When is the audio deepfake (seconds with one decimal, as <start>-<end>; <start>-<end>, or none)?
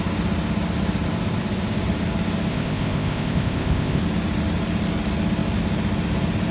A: 2.5-4.0